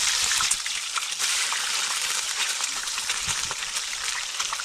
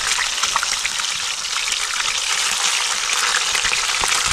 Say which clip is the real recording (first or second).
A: second